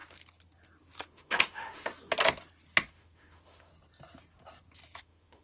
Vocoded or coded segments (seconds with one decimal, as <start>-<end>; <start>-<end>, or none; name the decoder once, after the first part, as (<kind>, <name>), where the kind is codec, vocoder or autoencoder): 1.1-1.9 (autoencoder, DAC-VAE); 2.9-3.7; 5.0-5.4